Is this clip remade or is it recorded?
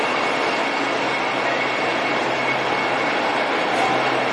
recorded